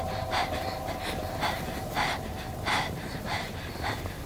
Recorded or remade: recorded